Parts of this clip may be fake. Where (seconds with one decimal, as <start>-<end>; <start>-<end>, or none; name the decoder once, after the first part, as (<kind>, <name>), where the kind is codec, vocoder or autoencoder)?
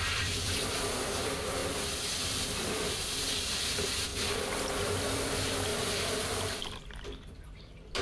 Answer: 0.0-1.6 (vocoder, BigVGAN v2); 2.2-4.1; 4.7-5.7; 6.6-8.0